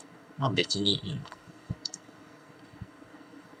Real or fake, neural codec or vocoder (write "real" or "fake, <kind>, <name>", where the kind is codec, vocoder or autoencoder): fake, codec, SNAC